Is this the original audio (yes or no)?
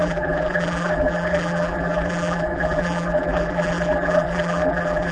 no